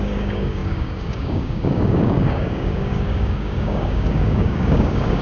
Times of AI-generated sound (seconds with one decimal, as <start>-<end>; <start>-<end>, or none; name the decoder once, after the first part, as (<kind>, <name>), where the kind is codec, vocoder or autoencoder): 0.0-5.2 (codec, DAC)